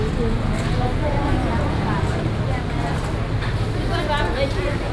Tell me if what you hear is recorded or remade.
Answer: recorded